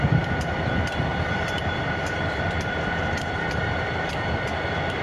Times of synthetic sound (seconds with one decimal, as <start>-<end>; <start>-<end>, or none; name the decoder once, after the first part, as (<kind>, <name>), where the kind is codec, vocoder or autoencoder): 1.1-4.1 (vocoder, BigVGAN v2)